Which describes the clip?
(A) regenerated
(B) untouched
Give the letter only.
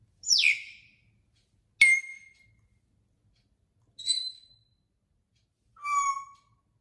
B